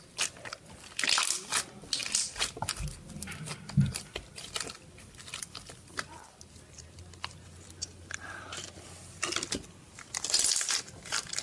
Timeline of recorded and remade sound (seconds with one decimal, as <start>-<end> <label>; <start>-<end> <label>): 0.0-11.4 recorded